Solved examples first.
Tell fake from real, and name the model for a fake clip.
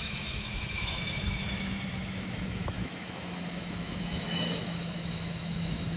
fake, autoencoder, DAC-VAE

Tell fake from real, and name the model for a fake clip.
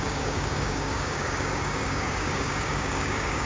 fake, codec, DAC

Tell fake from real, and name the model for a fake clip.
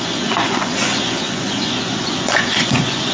fake, vocoder, Vocos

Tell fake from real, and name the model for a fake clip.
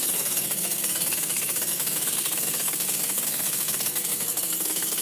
fake, codec, SNAC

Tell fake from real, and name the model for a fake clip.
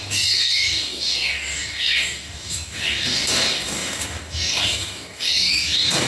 fake, codec, DAC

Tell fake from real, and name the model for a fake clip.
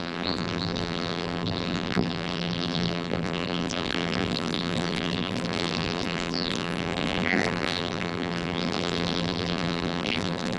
fake, vocoder, BigVGAN v2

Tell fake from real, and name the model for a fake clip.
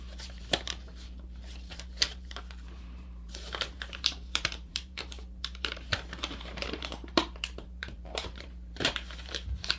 fake, vocoder, BigVGAN v2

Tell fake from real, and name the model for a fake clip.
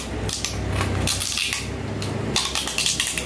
real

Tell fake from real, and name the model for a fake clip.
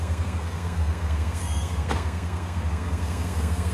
fake, codec, SNAC